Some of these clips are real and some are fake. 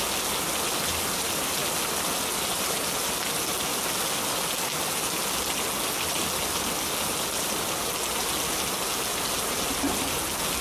real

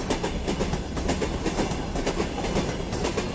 real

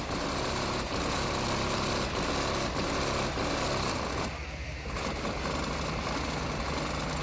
real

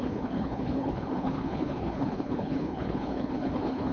fake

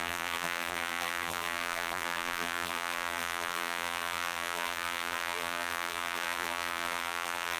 fake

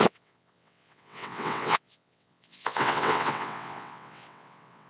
fake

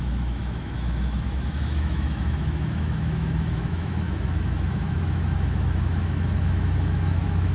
fake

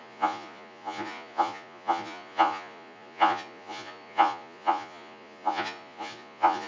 fake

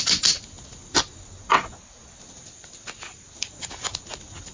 real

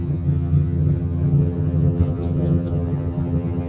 fake